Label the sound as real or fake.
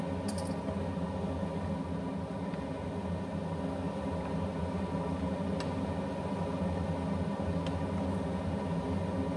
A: real